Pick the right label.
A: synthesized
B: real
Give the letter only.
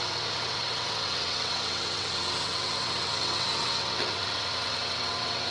A